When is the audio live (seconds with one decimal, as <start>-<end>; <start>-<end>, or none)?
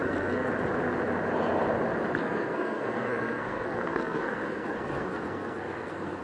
0.5-2.2